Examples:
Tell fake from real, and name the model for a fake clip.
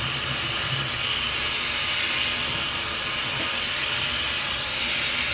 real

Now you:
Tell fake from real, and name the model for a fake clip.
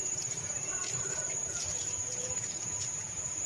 fake, vocoder, Vocos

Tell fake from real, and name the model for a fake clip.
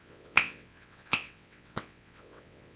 fake, vocoder, WaveNeXt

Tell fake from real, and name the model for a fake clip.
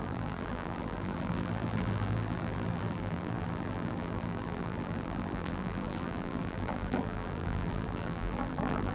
fake, vocoder, BigVGAN v2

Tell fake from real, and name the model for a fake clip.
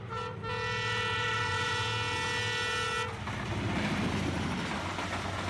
real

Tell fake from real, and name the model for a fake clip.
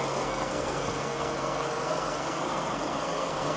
fake, codec, SNAC